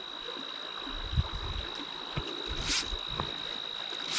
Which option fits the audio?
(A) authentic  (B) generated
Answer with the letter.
A